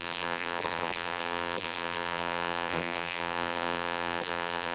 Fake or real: fake